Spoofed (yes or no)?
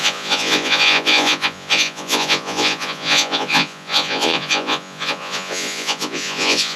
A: yes